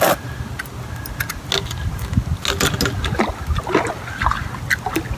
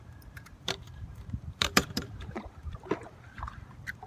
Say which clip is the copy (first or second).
second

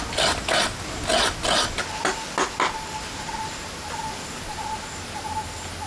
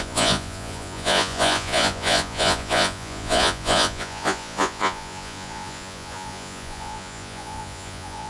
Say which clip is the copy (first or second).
second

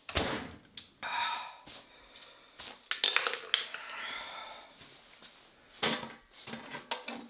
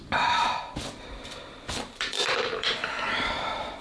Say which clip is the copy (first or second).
second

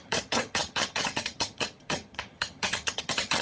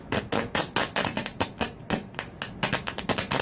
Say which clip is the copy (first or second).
first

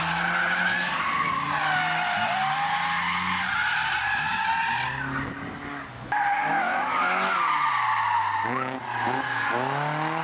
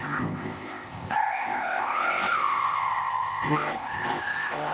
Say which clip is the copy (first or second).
second